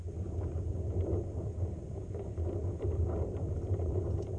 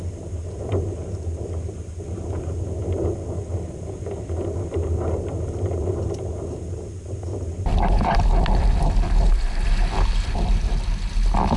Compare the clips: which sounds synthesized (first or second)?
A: first